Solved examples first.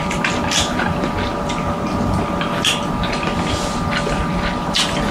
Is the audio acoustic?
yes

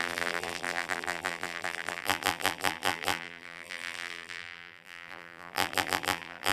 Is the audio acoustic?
no